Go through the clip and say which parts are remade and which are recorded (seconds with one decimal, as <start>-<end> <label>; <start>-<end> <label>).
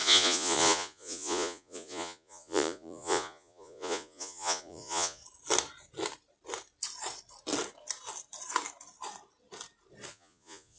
0.0-5.2 remade; 5.2-10.1 recorded; 10.1-10.8 remade